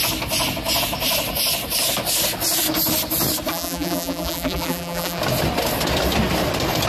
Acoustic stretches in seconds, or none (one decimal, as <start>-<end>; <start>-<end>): 0.0-3.5; 5.2-6.9